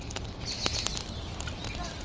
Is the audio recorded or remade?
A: recorded